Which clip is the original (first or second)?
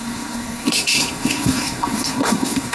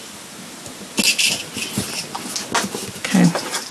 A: second